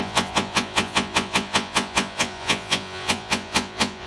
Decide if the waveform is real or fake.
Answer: fake